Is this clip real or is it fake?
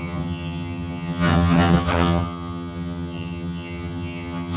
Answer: fake